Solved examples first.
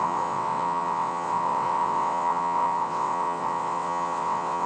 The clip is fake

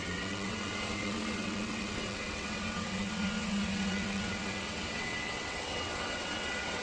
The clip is fake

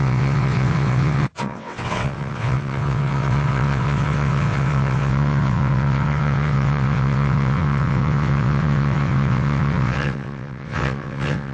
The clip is fake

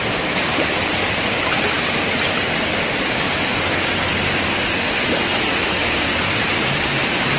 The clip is real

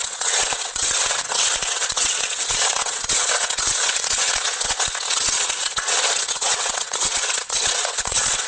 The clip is fake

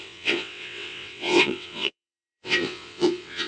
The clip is fake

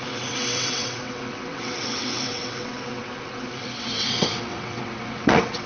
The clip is fake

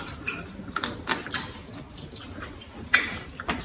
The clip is real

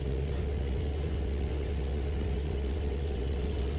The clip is fake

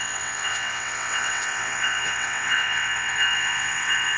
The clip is fake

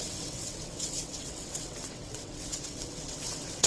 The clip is fake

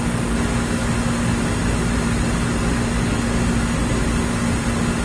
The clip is real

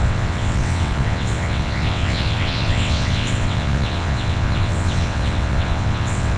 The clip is fake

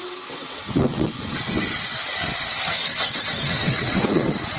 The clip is fake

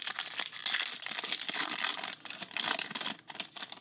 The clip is real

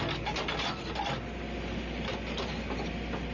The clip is real